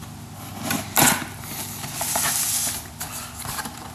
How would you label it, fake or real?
real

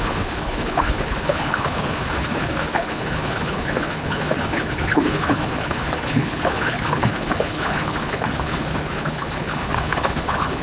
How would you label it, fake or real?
fake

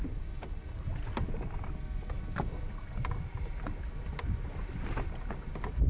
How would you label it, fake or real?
real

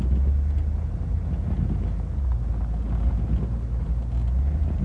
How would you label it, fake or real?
real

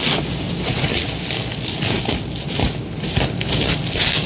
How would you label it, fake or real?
real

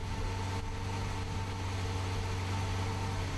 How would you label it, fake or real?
real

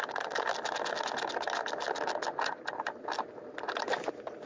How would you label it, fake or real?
real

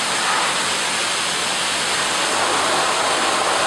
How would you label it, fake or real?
real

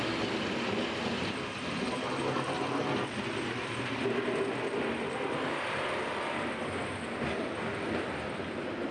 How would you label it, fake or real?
real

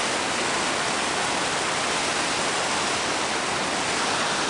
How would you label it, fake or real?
real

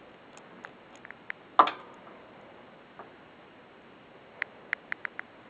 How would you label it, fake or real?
real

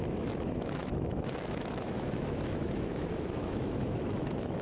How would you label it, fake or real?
fake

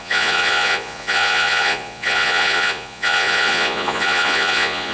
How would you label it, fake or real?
fake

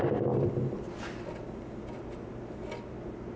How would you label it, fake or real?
real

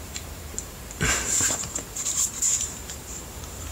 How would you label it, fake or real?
fake